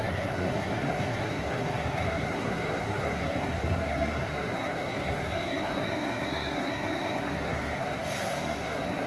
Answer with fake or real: fake